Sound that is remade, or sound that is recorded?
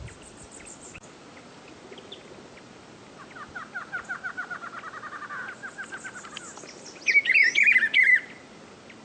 recorded